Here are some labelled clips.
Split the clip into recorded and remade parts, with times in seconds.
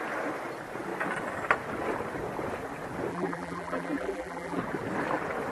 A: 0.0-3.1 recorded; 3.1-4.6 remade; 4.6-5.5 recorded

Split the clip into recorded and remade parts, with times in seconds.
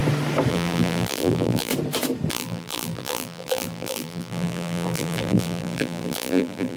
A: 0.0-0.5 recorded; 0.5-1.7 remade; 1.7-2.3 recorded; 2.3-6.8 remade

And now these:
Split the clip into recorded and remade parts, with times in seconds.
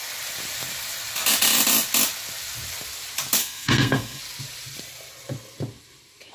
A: 0.0-3.4 recorded; 3.4-4.2 remade; 4.2-6.3 recorded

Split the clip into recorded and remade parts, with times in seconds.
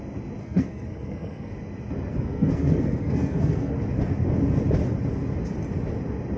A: 0.0-0.4 recorded; 0.4-1.5 remade; 1.5-2.1 recorded; 2.1-3.7 remade; 3.7-6.4 recorded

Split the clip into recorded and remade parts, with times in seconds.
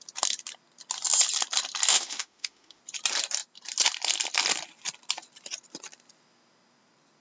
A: 0.0-1.9 recorded; 1.9-2.8 remade; 2.8-7.2 recorded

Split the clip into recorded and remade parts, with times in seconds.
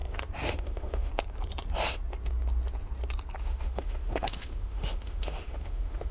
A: 0.0-0.5 recorded; 0.5-1.1 remade; 1.1-3.4 recorded; 3.4-6.1 remade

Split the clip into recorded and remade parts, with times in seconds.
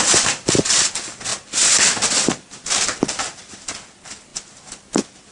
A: 0.0-5.3 recorded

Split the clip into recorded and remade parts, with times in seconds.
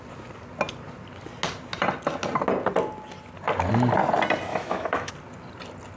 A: 0.0-4.5 recorded; 4.5-5.1 remade; 5.1-6.0 recorded